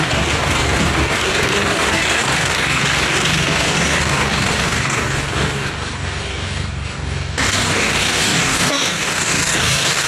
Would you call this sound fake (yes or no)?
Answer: yes